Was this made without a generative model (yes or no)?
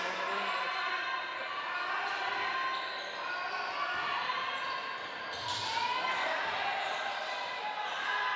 yes